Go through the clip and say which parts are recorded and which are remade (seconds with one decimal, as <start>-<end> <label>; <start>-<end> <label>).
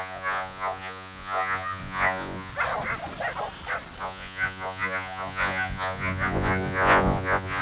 0.0-2.5 remade; 2.5-4.0 recorded; 4.0-7.6 remade